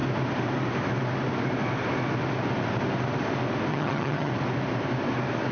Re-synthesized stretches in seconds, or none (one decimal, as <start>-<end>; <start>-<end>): 3.7-4.3